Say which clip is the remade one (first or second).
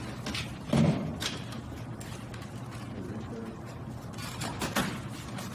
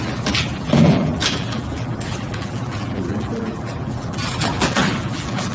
second